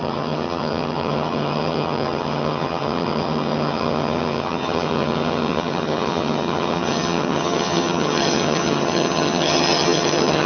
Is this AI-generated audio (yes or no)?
yes